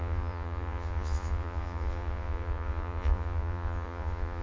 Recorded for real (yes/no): no